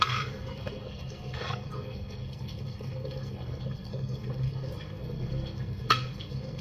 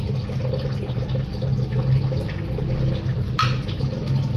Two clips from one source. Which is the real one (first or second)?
second